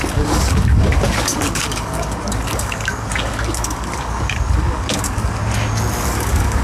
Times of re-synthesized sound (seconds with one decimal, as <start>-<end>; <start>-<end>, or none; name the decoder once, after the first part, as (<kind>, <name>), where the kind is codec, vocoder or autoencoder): 0.0-5.4 (codec, DAC); 6.0-6.6